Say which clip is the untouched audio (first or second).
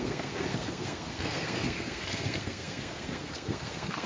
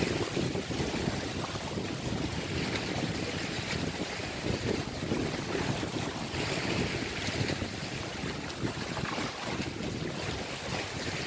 second